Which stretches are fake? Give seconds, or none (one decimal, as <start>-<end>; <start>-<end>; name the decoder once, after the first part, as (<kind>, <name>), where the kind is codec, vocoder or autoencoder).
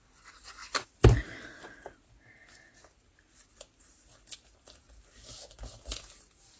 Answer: none